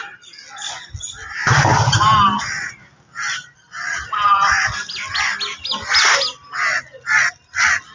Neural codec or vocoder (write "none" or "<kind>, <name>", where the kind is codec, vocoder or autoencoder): none